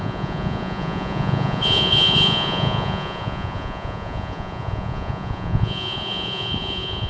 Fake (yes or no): yes